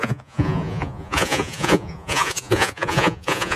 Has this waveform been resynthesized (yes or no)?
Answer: yes